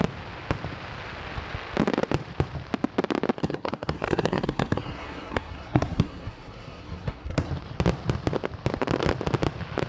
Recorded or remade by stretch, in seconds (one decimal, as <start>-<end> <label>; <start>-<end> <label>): 0.0-3.4 recorded; 3.4-7.5 remade; 7.5-9.9 recorded